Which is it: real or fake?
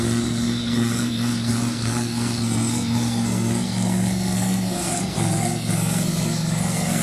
fake